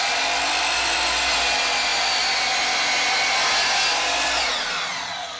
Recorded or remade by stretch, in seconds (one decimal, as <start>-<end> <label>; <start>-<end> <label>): 0.0-5.4 recorded